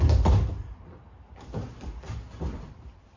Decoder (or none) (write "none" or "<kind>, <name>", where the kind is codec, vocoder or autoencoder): none